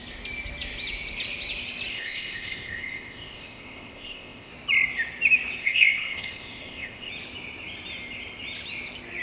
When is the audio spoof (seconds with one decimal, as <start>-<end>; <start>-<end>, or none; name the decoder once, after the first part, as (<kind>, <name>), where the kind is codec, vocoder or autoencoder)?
1.9-4.5 (codec, ZipCodec); 5.6-7.1